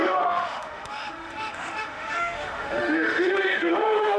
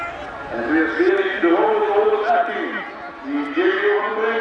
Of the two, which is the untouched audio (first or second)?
second